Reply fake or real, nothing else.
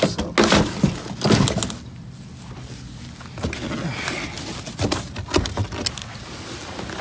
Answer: real